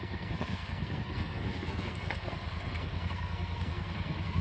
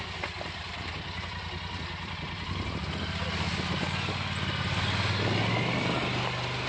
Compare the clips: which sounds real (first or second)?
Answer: second